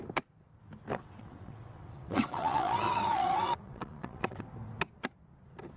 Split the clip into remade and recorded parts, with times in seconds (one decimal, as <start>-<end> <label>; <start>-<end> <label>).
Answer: 0.0-0.9 recorded; 0.9-4.4 remade; 4.4-5.8 recorded